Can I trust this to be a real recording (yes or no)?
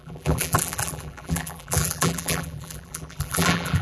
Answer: no